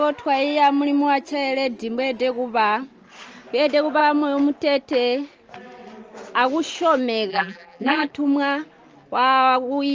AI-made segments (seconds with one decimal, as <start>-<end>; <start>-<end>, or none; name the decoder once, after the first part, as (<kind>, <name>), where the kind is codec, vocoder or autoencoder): 7.3-8.1 (vocoder, BigVGAN v2)